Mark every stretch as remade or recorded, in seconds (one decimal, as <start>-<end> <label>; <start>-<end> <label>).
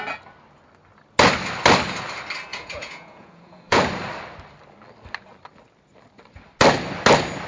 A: 0.0-2.5 recorded; 2.5-3.8 remade; 3.8-7.5 recorded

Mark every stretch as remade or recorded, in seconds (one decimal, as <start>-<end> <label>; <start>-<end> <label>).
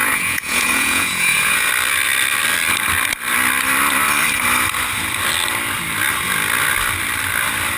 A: 0.0-1.7 remade; 1.7-7.8 recorded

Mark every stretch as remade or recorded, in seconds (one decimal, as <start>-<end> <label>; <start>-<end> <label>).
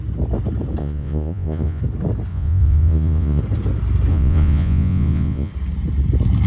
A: 0.0-0.8 recorded; 0.8-1.8 remade; 1.8-2.3 recorded; 2.3-3.4 remade; 3.4-4.1 recorded; 4.1-5.5 remade; 5.5-6.5 recorded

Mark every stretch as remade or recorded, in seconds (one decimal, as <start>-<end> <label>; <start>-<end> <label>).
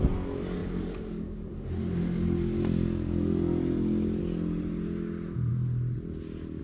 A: 0.0-6.6 recorded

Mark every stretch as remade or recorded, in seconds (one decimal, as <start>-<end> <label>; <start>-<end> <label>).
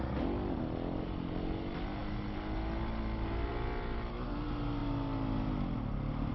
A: 0.0-6.3 recorded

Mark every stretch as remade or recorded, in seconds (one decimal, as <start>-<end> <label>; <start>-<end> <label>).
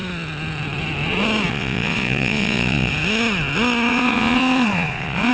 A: 0.0-1.5 recorded; 1.5-2.9 remade; 2.9-3.9 recorded; 3.9-5.3 remade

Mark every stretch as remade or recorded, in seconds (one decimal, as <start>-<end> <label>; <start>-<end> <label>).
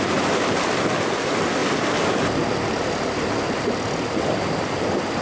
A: 0.0-5.2 recorded